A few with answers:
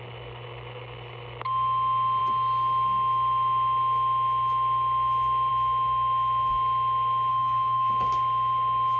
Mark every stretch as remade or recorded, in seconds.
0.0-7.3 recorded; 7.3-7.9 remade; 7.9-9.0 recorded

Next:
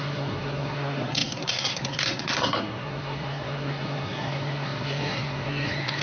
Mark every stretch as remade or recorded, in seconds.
0.0-6.0 remade